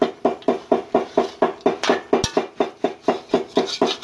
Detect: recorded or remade recorded